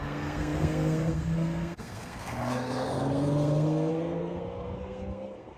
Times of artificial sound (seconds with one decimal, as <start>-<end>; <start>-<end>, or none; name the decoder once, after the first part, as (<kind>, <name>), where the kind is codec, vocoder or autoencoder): 0.0-5.6 (codec, SNAC)